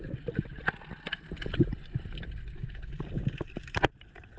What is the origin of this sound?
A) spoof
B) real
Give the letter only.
B